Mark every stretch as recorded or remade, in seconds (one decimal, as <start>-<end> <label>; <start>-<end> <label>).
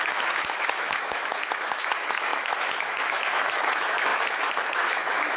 0.0-5.4 remade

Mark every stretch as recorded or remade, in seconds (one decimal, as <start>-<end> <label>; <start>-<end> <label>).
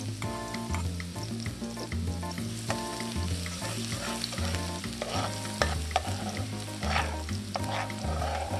0.0-8.6 recorded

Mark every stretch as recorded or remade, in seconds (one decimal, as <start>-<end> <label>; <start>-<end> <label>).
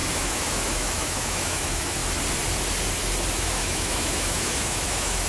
0.0-2.0 remade; 2.0-3.4 recorded; 3.4-5.3 remade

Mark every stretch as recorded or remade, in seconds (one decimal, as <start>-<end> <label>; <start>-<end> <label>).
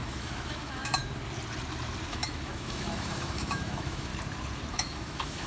0.0-1.0 remade; 1.0-2.1 recorded; 2.1-4.1 remade; 4.1-4.7 recorded; 4.7-5.5 remade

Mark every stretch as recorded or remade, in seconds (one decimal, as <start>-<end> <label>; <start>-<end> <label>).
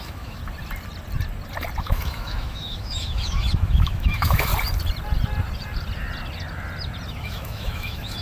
0.0-0.4 remade; 0.4-1.8 recorded; 1.8-4.5 remade; 4.5-7.1 recorded; 7.1-8.2 remade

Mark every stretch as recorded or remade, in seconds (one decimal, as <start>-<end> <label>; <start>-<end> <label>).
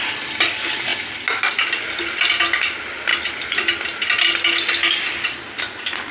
0.0-6.1 recorded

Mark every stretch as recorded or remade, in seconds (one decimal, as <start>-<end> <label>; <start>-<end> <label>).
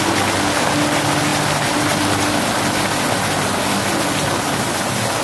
0.0-5.2 recorded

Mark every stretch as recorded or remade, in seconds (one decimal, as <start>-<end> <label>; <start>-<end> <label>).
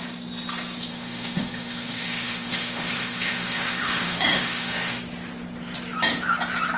0.0-0.9 recorded; 0.9-5.0 remade; 5.0-6.8 recorded